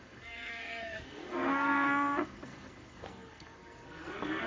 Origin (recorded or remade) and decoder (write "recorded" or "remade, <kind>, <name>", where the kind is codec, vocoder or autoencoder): remade, codec, SNAC